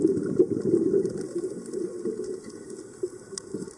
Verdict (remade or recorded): recorded